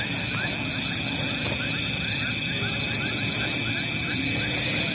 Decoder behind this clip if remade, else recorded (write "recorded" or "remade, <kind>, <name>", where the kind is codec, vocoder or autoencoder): recorded